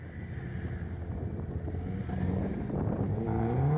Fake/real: real